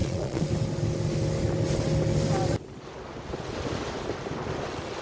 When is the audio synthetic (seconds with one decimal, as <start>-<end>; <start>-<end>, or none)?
0.0-0.5